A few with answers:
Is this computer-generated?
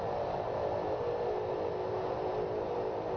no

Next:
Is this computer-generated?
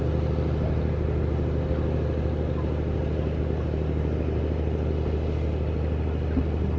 no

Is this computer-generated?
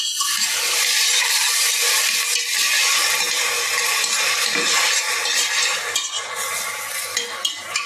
no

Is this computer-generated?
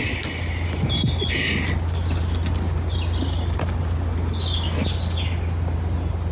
no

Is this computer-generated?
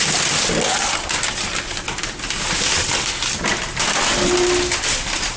no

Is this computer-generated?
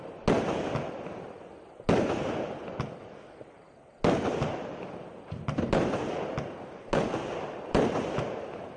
no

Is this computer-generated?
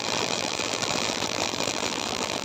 yes